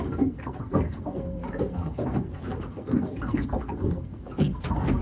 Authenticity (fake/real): fake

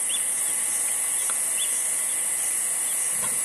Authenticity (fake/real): real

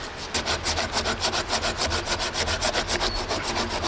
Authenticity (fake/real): real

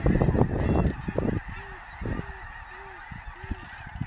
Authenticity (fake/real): real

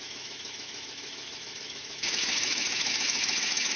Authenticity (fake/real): fake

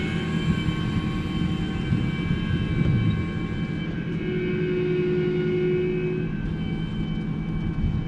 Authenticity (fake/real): real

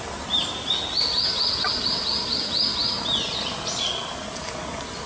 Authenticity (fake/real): real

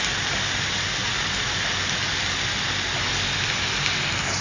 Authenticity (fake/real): real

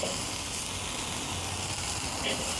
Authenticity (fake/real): real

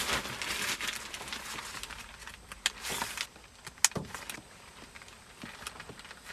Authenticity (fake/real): real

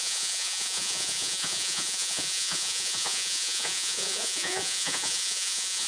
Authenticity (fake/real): fake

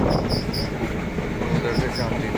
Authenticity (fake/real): real